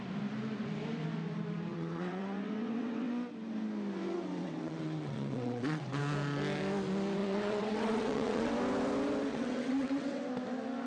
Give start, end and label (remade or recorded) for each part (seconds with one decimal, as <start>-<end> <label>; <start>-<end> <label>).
0.0-1.7 recorded; 1.7-3.1 remade; 3.1-4.4 recorded; 4.4-6.0 remade; 6.0-7.2 recorded; 7.2-8.5 remade; 8.5-9.3 recorded; 9.3-10.2 remade; 10.2-10.9 recorded

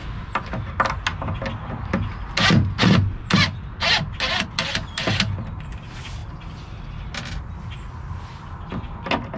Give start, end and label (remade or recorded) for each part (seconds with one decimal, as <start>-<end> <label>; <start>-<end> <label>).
0.0-9.4 recorded